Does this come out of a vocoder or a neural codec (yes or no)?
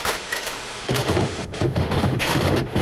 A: yes